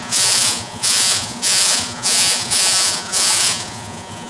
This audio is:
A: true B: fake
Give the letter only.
B